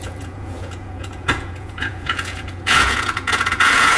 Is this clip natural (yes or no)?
no